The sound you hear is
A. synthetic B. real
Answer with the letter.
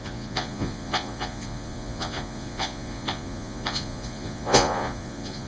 A